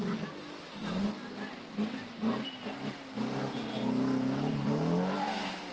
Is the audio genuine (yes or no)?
yes